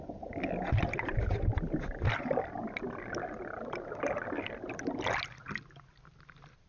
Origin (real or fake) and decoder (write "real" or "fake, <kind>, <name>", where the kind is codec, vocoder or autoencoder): real